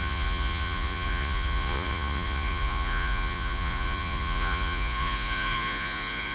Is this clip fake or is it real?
fake